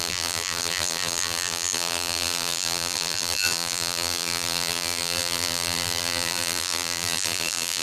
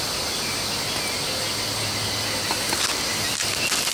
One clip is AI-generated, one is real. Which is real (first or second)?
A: second